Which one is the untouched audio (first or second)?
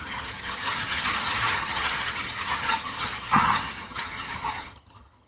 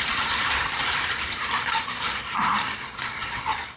second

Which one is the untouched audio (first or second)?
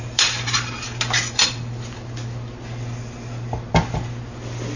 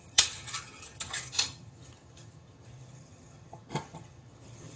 first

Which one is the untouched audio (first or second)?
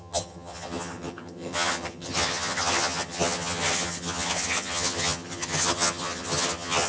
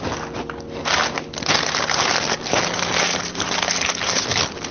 second